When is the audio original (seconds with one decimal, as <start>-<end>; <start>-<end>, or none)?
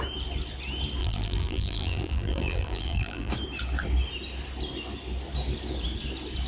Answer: 0.0-1.0; 3.3-6.5